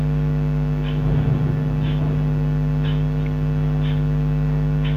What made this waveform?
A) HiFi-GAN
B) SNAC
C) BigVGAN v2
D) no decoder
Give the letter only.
D